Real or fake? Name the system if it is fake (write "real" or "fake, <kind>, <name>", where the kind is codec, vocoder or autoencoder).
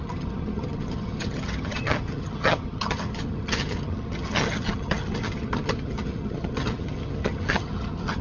fake, vocoder, HiFi-GAN